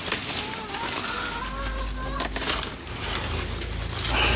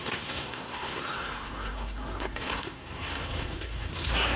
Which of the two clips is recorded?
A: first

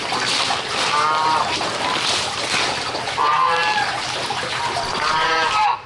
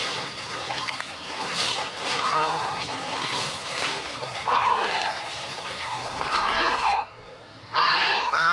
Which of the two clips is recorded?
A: first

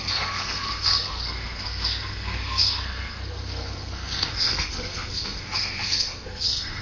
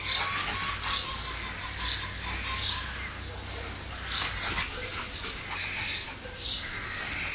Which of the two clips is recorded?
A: second